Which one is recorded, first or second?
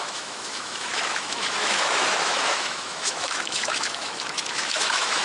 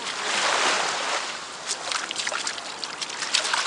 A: second